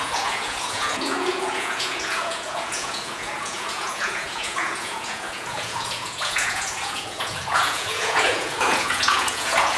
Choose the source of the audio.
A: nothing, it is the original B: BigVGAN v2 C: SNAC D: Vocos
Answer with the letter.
D